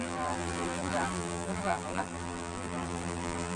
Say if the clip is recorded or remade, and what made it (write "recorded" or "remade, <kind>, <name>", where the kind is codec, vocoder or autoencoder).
remade, vocoder, BigVGAN v2